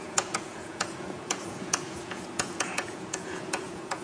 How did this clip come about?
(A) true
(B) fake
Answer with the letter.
B